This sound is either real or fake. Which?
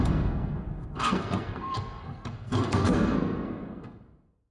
fake